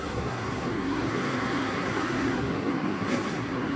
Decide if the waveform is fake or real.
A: fake